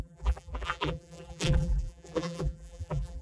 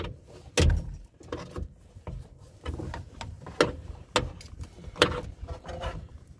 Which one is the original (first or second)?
second